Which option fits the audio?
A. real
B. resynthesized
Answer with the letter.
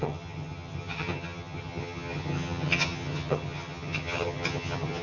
B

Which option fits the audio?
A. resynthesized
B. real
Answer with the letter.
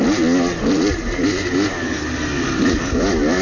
B